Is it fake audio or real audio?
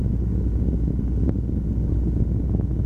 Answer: real